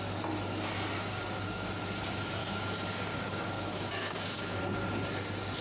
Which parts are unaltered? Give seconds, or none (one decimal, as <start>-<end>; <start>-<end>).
0.0-1.1; 1.7-2.4; 4.6-5.6